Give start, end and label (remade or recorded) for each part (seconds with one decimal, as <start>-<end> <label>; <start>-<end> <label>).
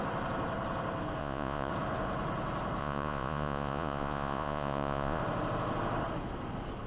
0.0-1.2 recorded; 1.2-1.7 remade; 1.7-2.8 recorded; 2.8-5.2 remade; 5.2-6.9 recorded